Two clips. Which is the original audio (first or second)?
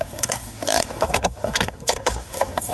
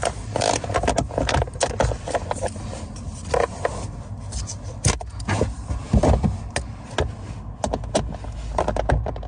second